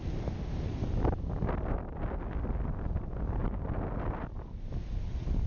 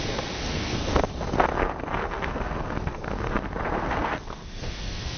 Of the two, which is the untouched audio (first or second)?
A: first